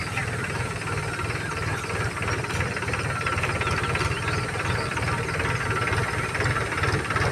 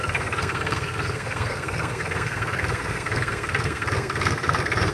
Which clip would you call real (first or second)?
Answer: first